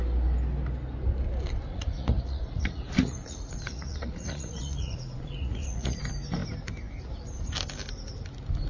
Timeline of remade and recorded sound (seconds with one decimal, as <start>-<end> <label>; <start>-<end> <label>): 0.0-1.7 recorded; 1.7-6.0 remade; 6.0-8.7 recorded